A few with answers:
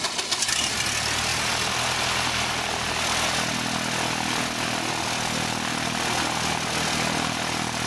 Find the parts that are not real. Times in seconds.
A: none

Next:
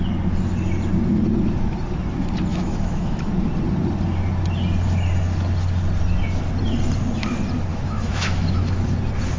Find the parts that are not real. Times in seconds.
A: 2.5-3.3 (autoencoder, DAC-VAE); 7.7-8.8

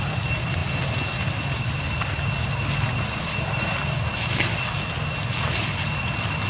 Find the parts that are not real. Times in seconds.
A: none

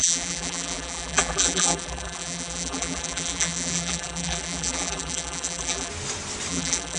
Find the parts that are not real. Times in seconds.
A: 0.0-5.9 (vocoder, BigVGAN v2); 6.5-7.0

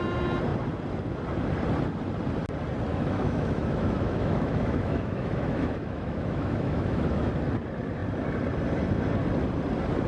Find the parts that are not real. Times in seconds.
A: 2.9-7.3 (autoencoder, DAC-VAE)

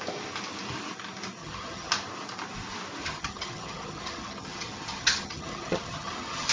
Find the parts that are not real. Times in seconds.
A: 1.4-1.9 (vocoder, HiFi-GAN); 3.0-6.5

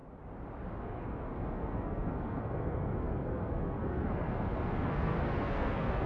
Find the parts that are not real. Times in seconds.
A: 0.8-6.1 (codec, SNAC)

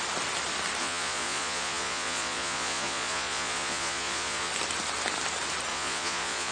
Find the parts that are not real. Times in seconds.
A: 0.8-4.5 (vocoder, Vocos); 5.7-6.5